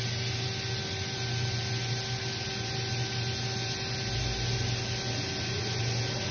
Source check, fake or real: real